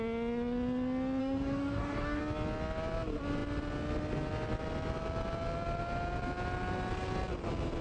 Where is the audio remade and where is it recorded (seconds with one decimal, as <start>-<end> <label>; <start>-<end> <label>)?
0.0-1.2 recorded; 1.2-2.2 remade; 2.2-7.8 recorded